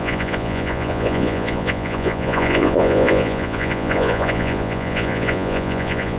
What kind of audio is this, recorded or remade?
remade